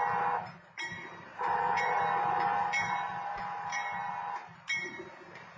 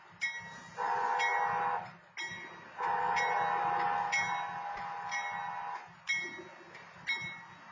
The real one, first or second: second